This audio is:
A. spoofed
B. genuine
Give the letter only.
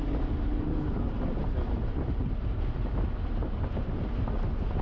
B